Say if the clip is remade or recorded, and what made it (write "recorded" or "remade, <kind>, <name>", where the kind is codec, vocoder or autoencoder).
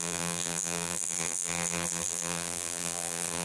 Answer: remade, vocoder, BigVGAN v2